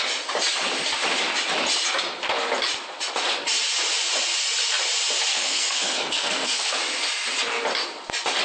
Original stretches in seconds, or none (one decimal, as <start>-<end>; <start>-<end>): 0.0-5.3; 6.8-8.4